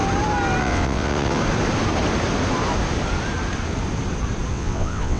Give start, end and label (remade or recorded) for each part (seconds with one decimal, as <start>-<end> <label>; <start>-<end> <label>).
0.0-0.6 recorded; 0.6-1.4 remade; 1.4-4.5 recorded; 4.5-5.2 remade